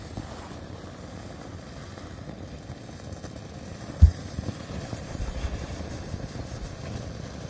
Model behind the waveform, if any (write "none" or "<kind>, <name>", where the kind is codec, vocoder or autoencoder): none